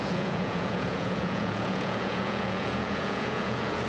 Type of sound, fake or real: fake